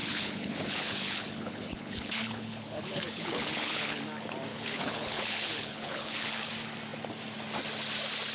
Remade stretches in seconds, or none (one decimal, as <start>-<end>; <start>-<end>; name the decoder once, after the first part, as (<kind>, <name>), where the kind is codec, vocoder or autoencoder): 0.0-4.0 (codec, HILCodec); 4.5-6.5